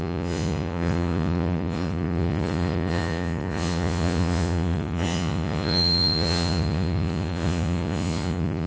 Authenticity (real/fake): fake